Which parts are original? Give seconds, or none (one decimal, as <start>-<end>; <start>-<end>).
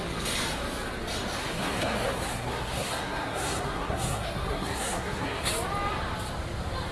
0.0-1.4; 5.5-6.9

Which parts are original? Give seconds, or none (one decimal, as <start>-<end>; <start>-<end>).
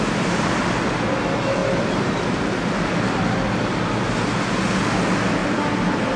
0.0-6.2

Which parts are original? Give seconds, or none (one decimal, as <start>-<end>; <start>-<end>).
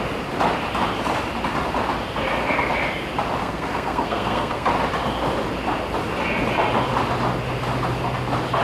0.0-3.4; 4.7-8.6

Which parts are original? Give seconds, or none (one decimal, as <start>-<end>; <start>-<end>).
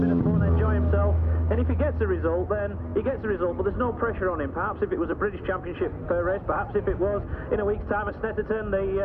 0.0-1.0; 1.8-9.0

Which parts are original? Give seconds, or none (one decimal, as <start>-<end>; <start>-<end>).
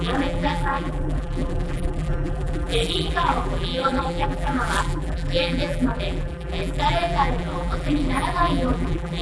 none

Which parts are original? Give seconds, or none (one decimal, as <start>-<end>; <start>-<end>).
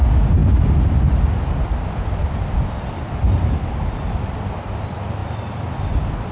0.0-6.3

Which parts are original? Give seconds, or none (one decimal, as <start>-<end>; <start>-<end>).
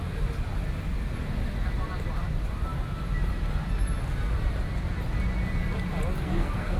0.0-6.1